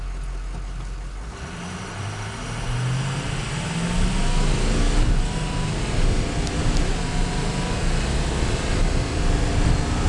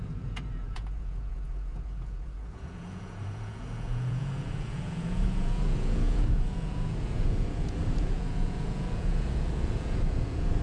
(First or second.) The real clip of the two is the first